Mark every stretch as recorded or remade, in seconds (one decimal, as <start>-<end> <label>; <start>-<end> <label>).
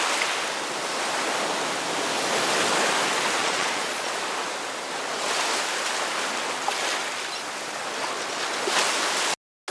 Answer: 0.0-3.4 recorded; 3.4-4.1 remade; 4.1-9.7 recorded